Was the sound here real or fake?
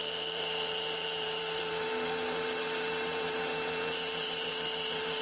fake